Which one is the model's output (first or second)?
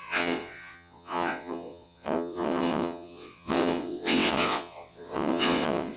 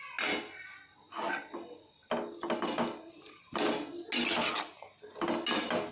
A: first